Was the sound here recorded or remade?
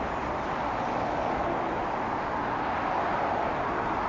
recorded